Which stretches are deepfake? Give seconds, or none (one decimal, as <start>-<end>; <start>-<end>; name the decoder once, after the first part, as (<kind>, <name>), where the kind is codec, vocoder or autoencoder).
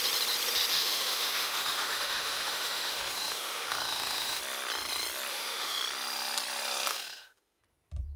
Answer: 0.7-4.4 (autoencoder, DAC-VAE); 5.3-5.8; 6.9-7.6